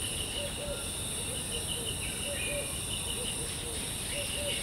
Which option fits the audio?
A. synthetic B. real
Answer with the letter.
B